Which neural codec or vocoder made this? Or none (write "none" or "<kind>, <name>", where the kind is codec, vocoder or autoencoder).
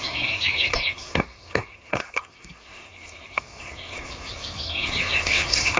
codec, SNAC